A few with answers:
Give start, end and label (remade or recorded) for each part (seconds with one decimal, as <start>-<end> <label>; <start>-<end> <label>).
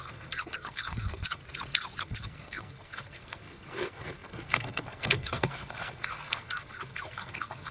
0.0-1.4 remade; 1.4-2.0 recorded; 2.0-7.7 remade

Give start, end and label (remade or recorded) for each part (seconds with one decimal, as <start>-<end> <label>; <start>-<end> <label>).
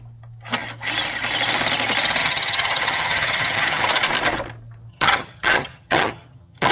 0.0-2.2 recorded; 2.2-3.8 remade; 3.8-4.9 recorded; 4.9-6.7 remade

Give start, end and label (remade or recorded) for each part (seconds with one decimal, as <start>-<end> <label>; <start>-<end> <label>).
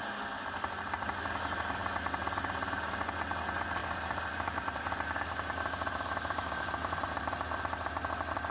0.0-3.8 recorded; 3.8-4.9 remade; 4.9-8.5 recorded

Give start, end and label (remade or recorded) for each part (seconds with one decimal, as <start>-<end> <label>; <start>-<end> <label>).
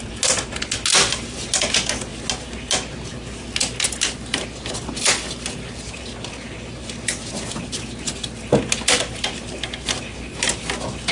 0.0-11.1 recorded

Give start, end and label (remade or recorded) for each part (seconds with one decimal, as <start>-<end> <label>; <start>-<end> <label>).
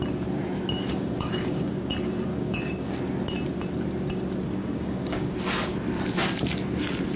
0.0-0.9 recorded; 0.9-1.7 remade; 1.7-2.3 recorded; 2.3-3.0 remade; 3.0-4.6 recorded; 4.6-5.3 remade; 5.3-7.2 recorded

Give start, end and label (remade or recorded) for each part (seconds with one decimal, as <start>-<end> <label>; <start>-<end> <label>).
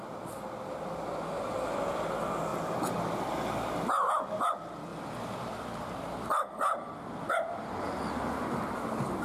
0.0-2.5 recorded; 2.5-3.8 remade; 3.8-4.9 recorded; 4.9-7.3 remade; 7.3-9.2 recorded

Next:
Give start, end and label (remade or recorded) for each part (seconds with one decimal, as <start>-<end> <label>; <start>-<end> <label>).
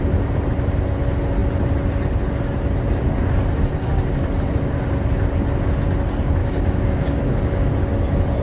0.0-6.4 recorded; 6.4-7.7 remade; 7.7-8.4 recorded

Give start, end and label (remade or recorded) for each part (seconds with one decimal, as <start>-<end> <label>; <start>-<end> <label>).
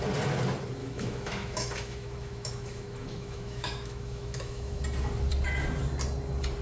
0.0-0.8 recorded; 0.8-4.8 remade; 4.8-6.6 recorded